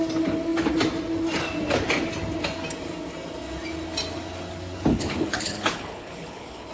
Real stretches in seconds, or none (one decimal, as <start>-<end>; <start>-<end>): 0.0-4.9